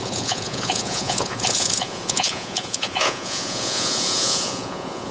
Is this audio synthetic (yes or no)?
yes